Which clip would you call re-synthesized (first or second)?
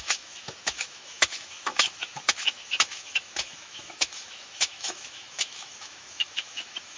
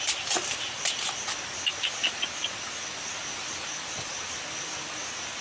first